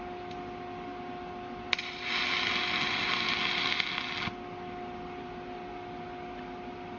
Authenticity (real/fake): real